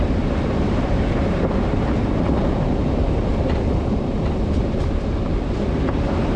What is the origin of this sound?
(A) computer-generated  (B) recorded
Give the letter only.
A